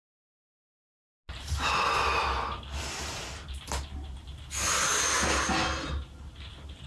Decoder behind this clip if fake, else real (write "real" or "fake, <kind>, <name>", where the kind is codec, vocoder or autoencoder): real